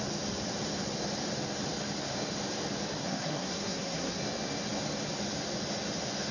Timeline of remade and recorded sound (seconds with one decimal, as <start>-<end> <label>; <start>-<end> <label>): 0.0-3.0 recorded; 3.0-4.2 remade; 4.2-6.3 recorded